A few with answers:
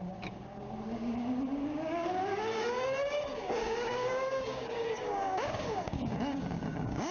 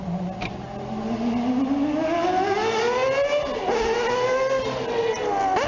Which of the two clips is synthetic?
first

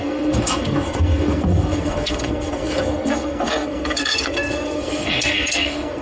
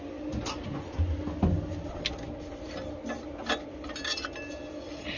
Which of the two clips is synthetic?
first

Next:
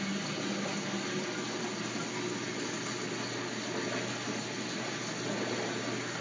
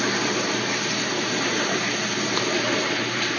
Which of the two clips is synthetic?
second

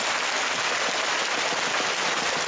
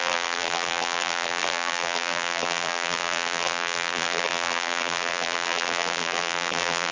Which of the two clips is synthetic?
second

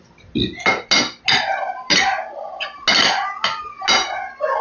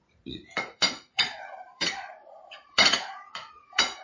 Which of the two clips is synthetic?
second